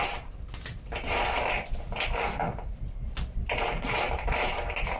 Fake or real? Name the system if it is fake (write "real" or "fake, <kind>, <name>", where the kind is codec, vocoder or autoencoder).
real